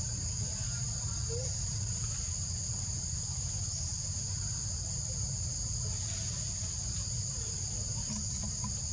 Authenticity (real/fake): real